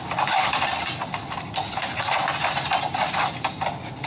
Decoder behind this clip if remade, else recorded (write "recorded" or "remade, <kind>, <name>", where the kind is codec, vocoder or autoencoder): recorded